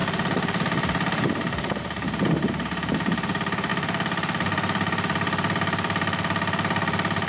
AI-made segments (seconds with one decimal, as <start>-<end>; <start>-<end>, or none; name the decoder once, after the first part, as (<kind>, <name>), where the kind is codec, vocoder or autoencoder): 1.8-3.7 (vocoder, BigVGAN v2)